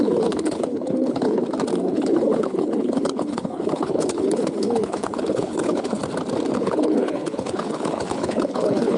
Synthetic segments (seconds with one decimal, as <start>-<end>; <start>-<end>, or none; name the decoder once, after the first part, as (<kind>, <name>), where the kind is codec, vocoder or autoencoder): 0.0-1.4 (codec, HILCodec); 1.9-6.0; 6.6-9.0